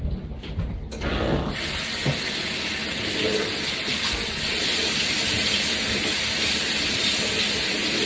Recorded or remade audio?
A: recorded